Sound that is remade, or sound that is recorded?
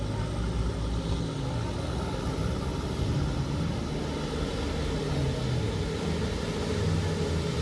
recorded